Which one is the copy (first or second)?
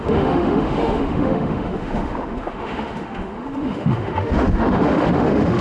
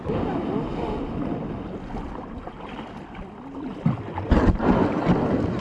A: first